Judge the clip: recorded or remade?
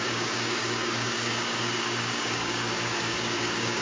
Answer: remade